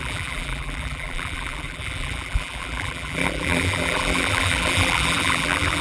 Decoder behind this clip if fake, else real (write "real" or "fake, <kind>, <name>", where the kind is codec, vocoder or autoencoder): fake, vocoder, BigVGAN v2